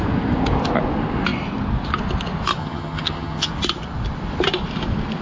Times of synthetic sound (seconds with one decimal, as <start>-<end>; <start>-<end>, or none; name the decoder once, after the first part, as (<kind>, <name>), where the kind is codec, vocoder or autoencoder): 2.6-3.5 (vocoder, HiFi-GAN)